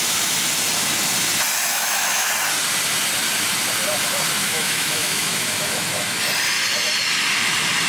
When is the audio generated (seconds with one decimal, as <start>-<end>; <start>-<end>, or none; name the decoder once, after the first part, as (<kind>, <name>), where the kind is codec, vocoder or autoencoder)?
1.7-2.3 (autoencoder, DAC-VAE); 4.4-6.2